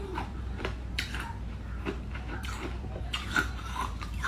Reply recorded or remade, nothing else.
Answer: remade